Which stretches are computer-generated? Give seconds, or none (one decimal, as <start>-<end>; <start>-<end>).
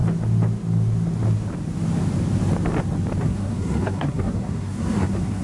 3.2-5.4